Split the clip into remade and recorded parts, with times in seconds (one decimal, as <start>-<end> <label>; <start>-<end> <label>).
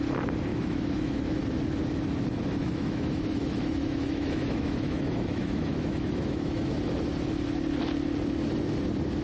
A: 0.0-0.5 recorded; 0.5-1.2 remade; 1.2-2.6 recorded; 2.6-6.7 remade; 6.7-9.2 recorded